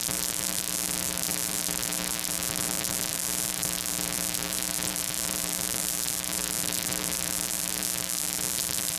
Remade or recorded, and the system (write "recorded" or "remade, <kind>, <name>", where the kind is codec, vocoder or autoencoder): remade, vocoder, BigVGAN v2